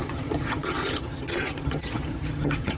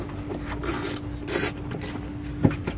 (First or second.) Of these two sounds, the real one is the second